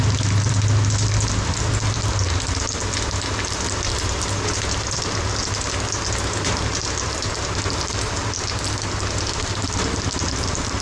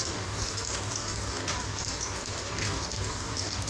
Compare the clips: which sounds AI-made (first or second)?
second